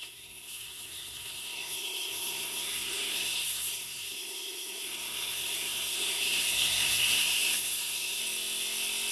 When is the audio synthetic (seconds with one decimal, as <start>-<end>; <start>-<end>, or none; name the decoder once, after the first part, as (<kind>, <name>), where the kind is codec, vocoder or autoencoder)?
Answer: 0.0-8.2 (codec, SNAC)